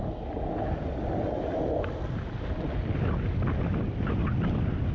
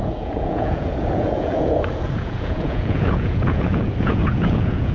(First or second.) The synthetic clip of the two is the second